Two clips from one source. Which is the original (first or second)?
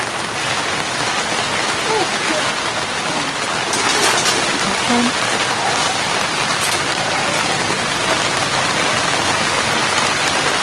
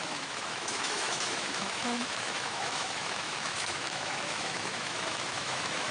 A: first